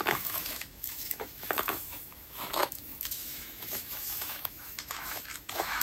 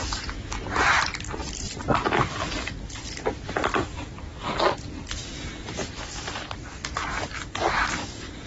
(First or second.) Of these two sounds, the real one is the second